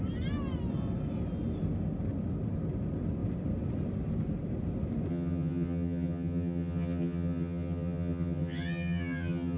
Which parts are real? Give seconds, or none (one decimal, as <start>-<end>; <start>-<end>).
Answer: 0.0-5.1